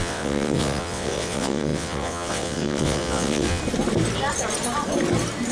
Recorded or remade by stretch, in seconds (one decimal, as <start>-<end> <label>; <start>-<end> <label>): 0.0-3.6 remade; 3.6-5.5 recorded